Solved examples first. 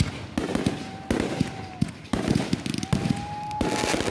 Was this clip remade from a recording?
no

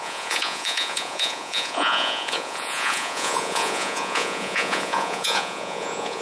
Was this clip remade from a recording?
yes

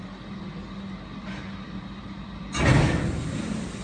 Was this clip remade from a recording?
no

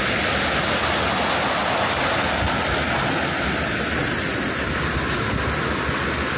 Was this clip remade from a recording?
no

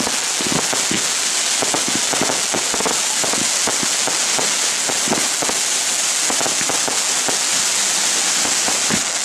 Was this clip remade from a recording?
no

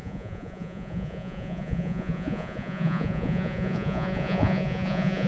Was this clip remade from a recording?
yes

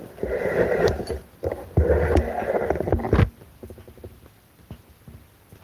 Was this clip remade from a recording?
no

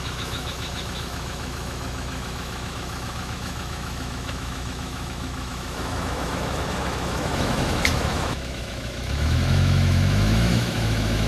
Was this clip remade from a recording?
yes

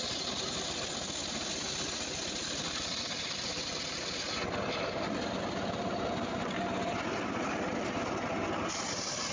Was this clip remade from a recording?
no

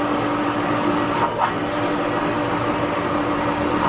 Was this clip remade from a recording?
no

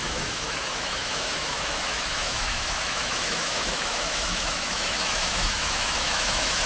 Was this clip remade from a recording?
yes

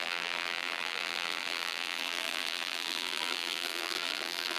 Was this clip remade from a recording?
yes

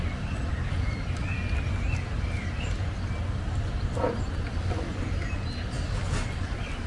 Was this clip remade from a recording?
no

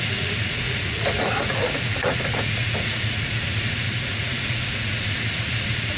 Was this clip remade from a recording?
yes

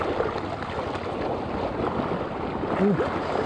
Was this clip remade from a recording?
no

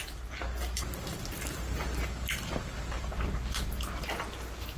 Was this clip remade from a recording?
no